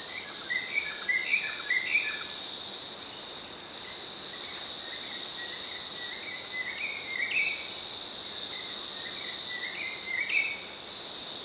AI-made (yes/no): no